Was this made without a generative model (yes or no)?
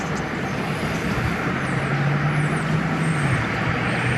yes